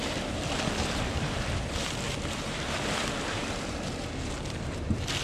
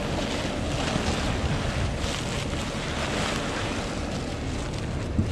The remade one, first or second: first